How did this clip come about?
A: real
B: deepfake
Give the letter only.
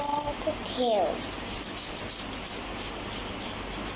A